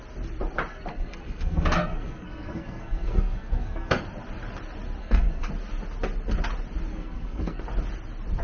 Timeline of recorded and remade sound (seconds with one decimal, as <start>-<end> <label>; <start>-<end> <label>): 0.0-0.7 recorded; 0.7-4.0 remade; 4.0-5.0 recorded; 5.0-5.5 remade; 5.5-6.9 recorded; 6.9-7.6 remade; 7.6-8.4 recorded